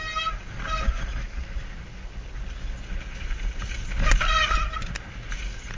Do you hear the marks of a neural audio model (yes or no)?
no